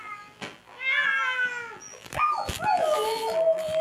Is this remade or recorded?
remade